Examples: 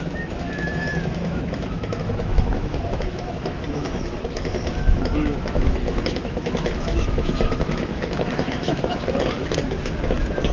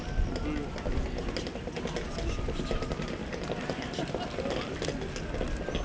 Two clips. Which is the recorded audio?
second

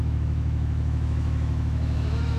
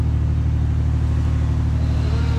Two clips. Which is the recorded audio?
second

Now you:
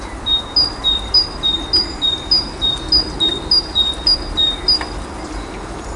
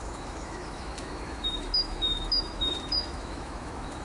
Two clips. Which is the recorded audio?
first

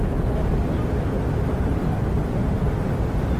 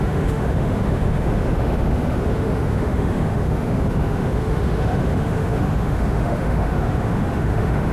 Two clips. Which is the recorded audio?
first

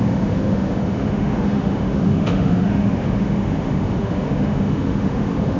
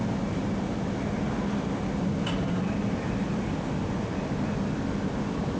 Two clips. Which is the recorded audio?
second